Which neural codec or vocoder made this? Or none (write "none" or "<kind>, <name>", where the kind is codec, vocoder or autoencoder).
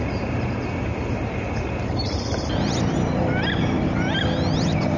vocoder, BigVGAN v2